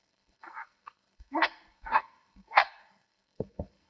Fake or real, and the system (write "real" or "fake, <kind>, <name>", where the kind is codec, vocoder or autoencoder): fake, codec, SNAC